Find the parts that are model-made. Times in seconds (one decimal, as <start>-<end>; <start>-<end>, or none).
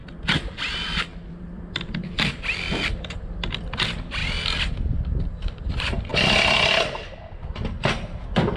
none